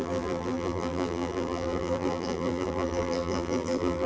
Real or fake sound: fake